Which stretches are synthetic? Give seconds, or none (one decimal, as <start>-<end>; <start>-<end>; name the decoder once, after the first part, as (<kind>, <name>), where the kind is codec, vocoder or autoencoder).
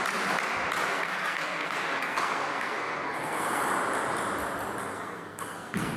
0.9-3.6 (codec, SNAC); 4.8-6.0